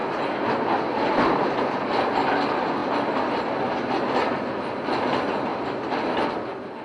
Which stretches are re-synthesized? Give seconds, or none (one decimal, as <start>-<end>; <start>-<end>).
none